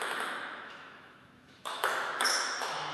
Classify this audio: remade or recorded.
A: remade